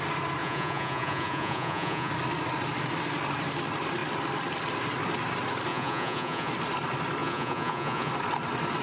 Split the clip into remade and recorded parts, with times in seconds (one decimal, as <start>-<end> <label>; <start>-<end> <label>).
0.0-0.4 recorded; 0.4-2.1 remade; 2.1-5.7 recorded; 5.7-6.5 remade; 6.5-7.2 recorded; 7.2-8.1 remade; 8.1-8.8 recorded